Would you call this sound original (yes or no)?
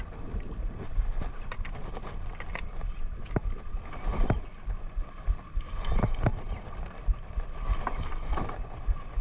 yes